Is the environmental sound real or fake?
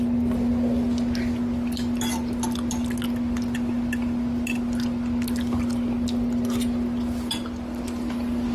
real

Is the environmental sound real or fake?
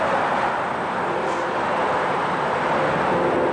real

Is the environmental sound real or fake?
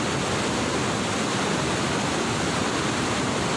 real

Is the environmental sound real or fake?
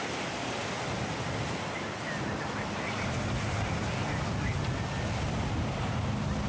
real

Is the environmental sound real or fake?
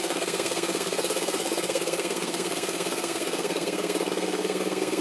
fake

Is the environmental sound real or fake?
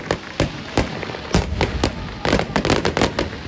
real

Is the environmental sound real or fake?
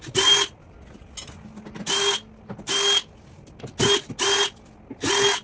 real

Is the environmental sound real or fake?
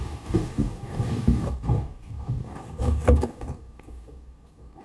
fake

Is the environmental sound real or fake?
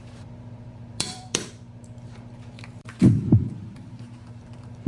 fake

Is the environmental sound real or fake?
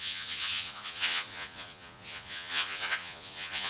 fake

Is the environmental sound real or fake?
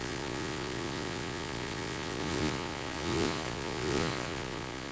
fake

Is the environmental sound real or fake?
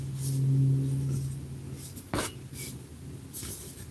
real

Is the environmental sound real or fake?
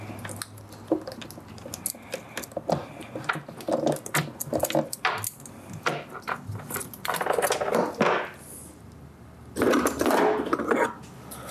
real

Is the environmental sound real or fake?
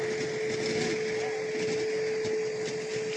real